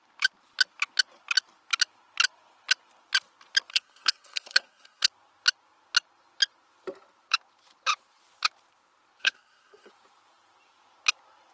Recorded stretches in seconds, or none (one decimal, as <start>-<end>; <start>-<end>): 0.0-3.7; 5.1-9.2; 9.9-11.5